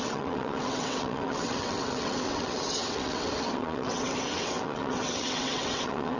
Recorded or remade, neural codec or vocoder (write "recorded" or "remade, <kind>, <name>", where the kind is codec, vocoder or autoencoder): remade, vocoder, WaveNeXt